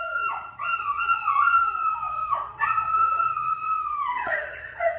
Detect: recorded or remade remade